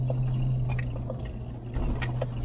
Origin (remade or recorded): recorded